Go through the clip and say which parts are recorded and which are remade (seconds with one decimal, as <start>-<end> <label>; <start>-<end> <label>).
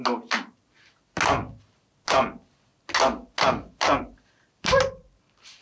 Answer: 0.0-5.6 recorded